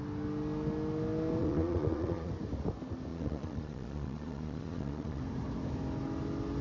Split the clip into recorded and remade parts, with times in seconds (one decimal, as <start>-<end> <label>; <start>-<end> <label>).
0.0-1.4 recorded; 1.4-2.3 remade; 2.3-3.1 recorded; 3.1-5.2 remade; 5.2-6.6 recorded